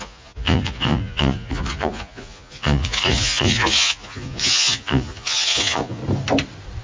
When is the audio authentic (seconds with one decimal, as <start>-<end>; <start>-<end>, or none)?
6.0-6.8

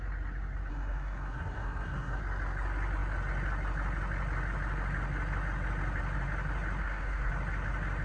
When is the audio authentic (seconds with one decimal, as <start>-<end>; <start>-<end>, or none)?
0.0-0.7; 2.2-6.8; 7.3-8.0

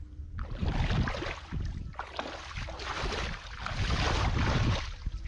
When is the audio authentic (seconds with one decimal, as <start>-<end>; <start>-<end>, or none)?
0.0-5.3

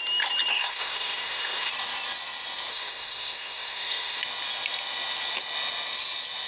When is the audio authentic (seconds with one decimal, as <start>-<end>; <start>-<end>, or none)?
0.0-0.5; 1.7-2.7; 4.2-6.5